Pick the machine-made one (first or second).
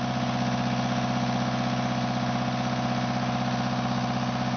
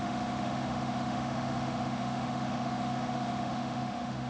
second